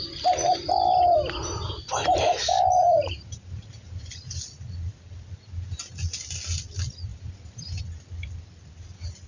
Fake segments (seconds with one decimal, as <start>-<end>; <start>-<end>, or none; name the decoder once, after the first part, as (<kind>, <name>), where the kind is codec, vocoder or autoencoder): 1.4-4.1 (vocoder, BigVGAN v2); 7.1-7.8